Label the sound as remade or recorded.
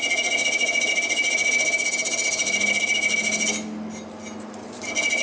recorded